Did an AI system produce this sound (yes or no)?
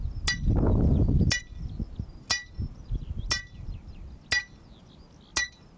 no